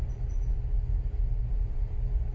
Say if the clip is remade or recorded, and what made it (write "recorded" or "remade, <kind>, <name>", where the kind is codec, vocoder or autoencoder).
recorded